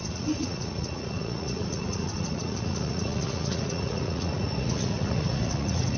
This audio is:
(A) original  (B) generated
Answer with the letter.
B